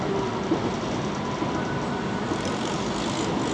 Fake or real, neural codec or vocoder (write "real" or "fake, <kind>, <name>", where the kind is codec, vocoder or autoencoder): real